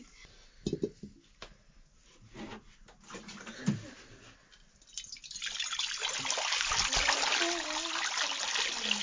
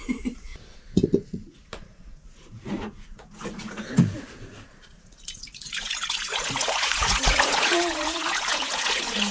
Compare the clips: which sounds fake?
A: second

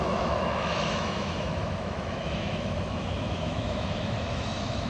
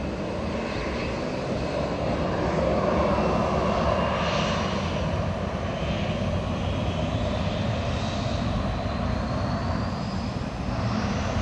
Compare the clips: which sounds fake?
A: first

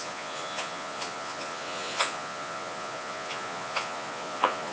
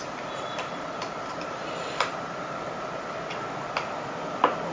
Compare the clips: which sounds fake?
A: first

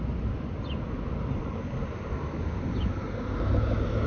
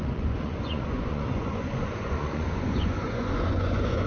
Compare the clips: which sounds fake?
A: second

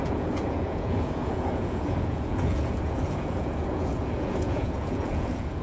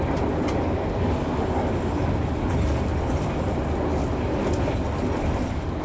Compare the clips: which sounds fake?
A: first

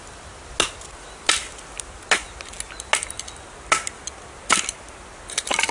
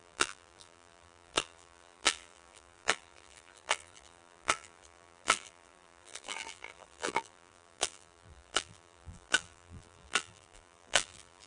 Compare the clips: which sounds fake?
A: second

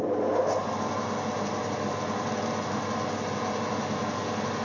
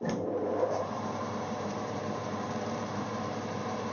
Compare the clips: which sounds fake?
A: second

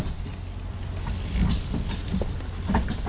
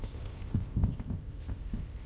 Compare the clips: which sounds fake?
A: second